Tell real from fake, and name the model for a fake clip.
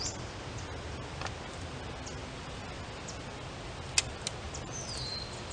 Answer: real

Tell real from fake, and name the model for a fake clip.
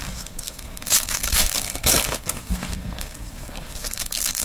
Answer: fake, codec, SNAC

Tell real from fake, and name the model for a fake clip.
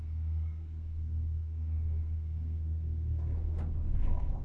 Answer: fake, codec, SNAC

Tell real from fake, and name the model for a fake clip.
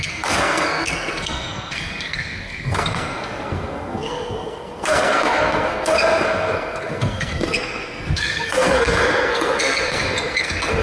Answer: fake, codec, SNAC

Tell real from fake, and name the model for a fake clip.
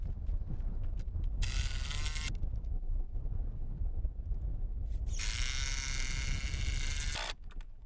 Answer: real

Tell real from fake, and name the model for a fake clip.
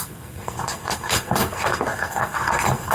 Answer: fake, codec, SNAC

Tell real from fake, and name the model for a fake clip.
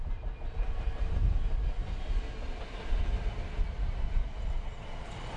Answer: real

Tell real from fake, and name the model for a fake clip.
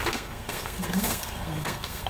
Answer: fake, codec, SNAC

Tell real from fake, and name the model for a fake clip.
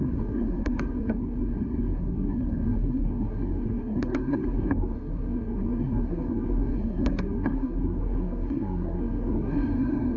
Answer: fake, codec, SNAC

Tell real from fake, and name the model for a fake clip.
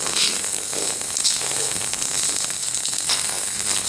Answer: fake, codec, SNAC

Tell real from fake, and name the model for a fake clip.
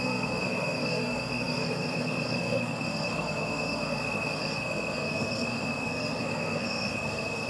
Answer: fake, codec, SNAC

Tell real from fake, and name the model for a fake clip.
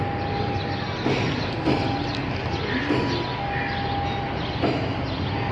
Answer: real